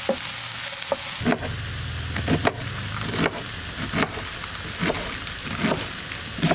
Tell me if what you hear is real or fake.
real